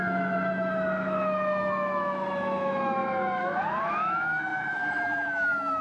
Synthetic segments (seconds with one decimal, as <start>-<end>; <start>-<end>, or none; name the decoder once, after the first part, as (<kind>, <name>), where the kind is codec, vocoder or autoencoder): 0.0-5.8 (autoencoder, DAC-VAE)

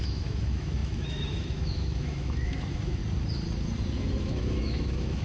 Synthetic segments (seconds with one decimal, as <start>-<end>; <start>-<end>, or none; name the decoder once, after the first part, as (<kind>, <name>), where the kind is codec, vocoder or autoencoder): 0.0-3.0 (autoencoder, DAC-VAE); 4.2-5.2

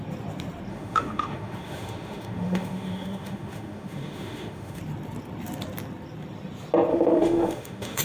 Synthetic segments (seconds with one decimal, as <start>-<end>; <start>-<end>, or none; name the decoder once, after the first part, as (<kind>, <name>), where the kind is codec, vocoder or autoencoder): 0.7-4.8 (autoencoder, DAC-VAE); 6.9-8.0